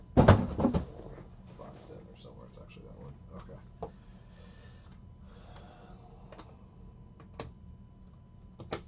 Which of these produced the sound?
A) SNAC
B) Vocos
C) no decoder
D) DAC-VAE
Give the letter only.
C